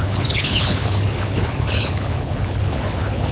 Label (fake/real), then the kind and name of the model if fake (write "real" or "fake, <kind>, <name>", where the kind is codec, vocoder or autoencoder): fake, codec, HILCodec